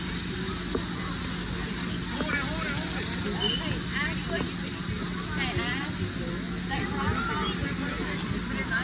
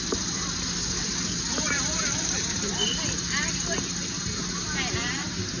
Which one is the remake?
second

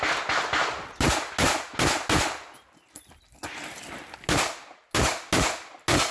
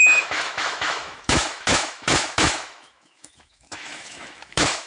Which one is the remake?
second